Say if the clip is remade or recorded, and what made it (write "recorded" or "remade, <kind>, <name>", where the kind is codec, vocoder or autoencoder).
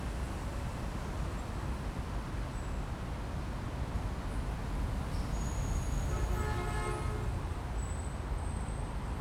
recorded